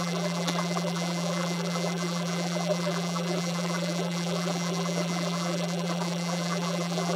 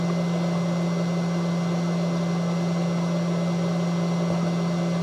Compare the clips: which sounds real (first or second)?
second